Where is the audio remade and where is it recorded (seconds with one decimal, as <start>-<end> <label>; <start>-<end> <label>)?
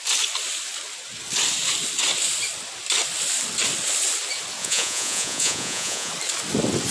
0.0-4.6 recorded; 4.6-6.1 remade; 6.1-6.9 recorded